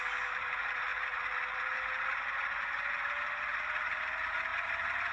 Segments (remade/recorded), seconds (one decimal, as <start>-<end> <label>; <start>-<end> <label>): 0.0-5.1 recorded